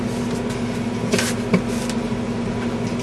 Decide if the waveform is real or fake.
real